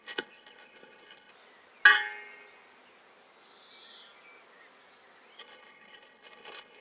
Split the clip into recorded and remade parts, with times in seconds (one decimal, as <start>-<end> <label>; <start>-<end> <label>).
0.0-1.3 remade; 1.3-5.4 recorded; 5.4-6.8 remade